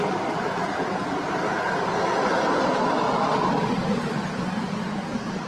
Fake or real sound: real